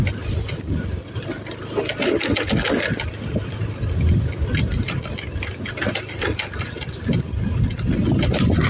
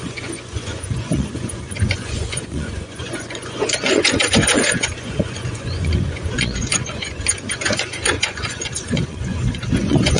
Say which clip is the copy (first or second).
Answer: second